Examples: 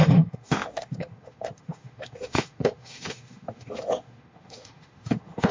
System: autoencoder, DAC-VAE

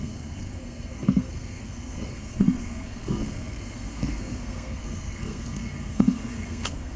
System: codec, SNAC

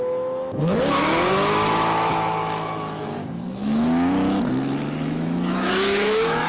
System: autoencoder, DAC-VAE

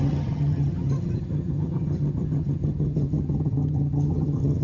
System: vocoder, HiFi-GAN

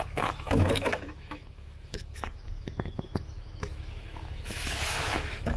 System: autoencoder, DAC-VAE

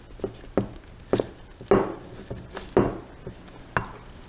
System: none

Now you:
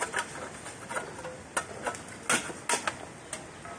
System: none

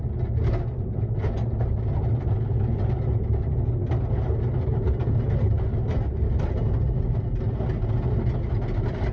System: none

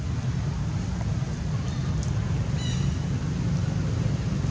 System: none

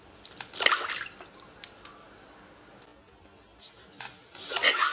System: none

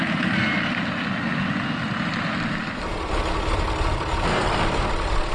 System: none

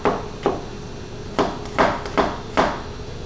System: none